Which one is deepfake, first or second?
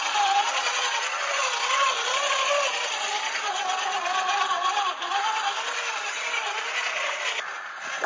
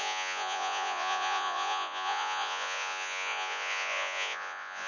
second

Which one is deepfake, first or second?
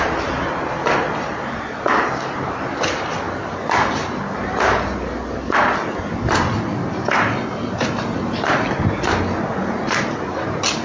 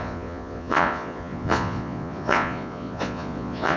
second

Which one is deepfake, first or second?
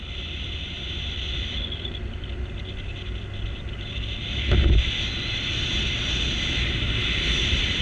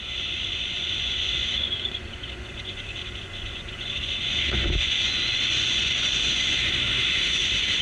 second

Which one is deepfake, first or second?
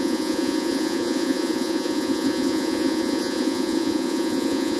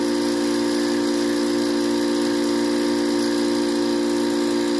first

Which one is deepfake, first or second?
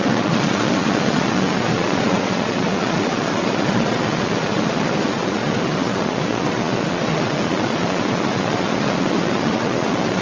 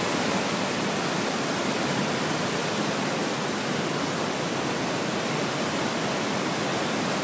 first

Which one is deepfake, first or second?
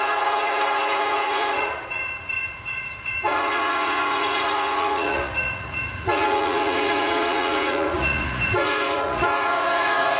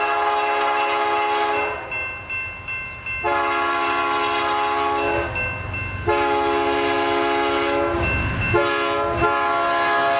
first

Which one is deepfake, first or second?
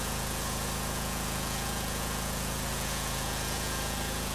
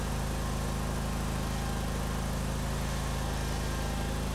first